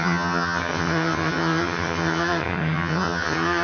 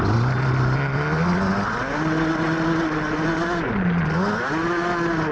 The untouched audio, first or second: second